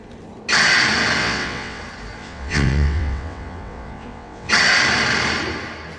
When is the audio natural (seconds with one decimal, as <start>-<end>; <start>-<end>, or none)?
0.0-1.2; 1.8-2.2; 4.5-6.0